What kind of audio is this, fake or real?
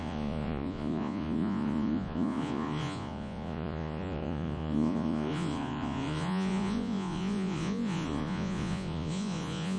fake